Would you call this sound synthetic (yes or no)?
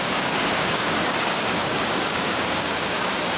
yes